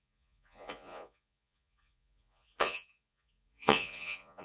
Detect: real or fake fake